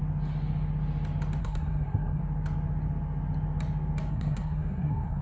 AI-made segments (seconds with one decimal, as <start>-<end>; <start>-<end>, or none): 1.4-2.2; 4.1-5.2